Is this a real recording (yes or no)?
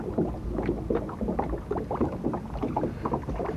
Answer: yes